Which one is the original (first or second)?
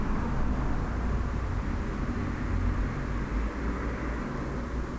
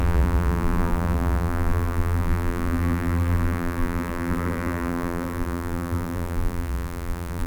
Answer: first